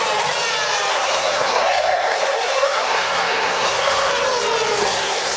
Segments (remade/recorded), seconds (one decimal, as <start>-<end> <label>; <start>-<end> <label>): 0.0-0.9 recorded; 0.9-4.1 remade; 4.1-4.8 recorded; 4.8-5.4 remade